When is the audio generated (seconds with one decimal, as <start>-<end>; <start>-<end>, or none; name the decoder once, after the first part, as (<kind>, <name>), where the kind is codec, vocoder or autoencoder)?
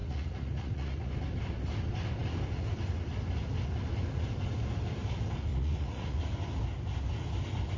0.0-1.1 (vocoder, Vocos); 5.5-6.2